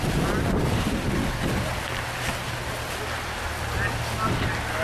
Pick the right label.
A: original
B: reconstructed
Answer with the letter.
A